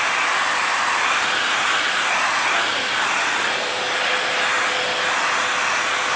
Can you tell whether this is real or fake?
real